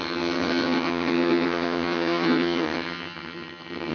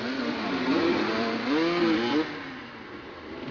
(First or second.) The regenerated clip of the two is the first